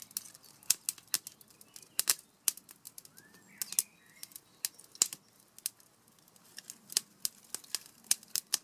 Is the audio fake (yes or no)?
no